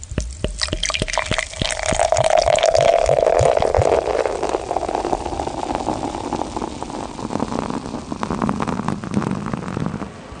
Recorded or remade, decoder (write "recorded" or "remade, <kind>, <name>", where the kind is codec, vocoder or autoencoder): recorded